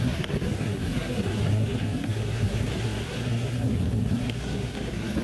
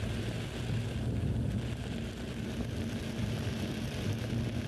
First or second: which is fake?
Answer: first